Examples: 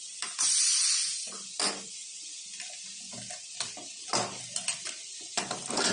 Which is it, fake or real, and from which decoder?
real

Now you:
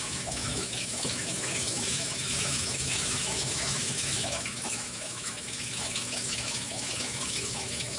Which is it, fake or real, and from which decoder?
fake, autoencoder, DAC-VAE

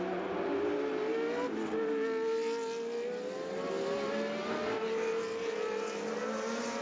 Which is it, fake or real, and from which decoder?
real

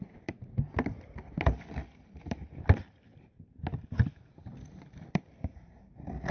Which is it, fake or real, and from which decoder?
fake, vocoder, BigVGAN v2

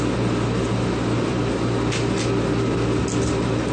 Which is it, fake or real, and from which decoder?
real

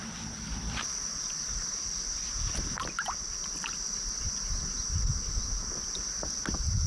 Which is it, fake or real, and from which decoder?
fake, vocoder, BigVGAN v2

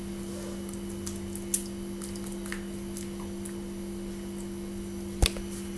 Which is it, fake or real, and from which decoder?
real